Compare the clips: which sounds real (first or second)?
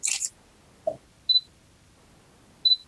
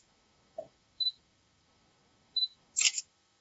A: first